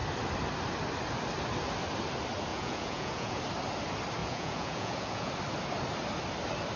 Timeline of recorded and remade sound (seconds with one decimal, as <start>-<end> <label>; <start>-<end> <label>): 0.0-2.5 recorded; 2.5-3.4 remade; 3.4-4.2 recorded; 4.2-5.3 remade; 5.3-6.8 recorded